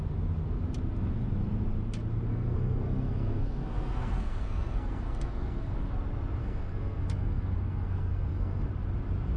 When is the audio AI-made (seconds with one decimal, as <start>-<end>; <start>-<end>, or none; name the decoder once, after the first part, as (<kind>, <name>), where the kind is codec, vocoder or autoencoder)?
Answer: 2.3-5.9 (codec, SNAC); 6.4-8.7